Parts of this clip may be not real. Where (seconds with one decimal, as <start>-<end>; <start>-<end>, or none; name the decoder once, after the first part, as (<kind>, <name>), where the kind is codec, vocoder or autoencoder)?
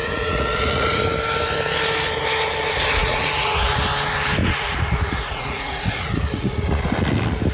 0.0-1.0 (vocoder, Vocos); 3.0-3.8; 4.4-6.9